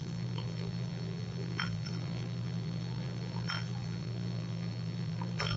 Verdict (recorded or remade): remade